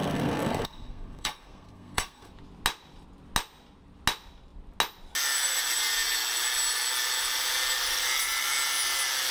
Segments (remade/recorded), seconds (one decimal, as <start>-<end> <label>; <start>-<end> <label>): 0.0-2.3 remade; 2.3-9.3 recorded